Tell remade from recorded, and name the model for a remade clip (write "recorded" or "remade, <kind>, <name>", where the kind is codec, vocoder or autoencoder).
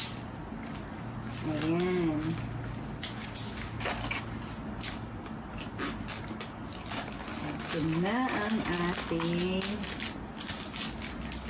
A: recorded